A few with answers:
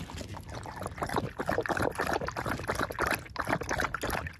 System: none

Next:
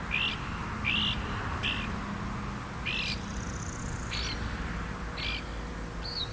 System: none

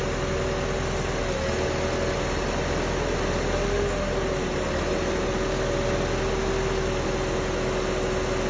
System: none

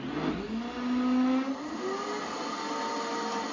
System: none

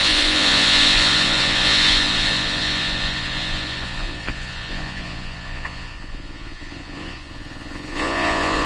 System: vocoder, Vocos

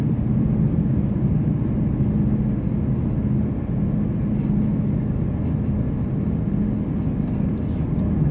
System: none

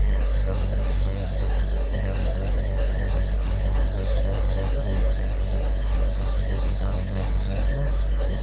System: codec, SNAC